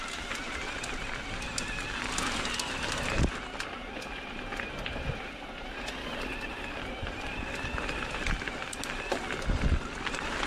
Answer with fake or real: real